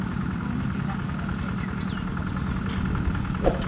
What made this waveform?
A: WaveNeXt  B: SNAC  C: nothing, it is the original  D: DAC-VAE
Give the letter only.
C